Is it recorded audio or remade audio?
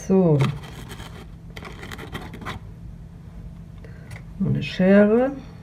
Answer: recorded